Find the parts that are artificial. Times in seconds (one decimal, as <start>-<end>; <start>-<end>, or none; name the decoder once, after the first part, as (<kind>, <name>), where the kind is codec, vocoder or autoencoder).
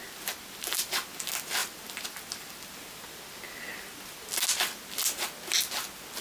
none